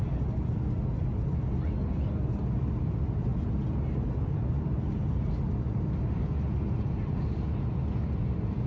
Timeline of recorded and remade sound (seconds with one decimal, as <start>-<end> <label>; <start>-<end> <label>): 0.0-8.7 recorded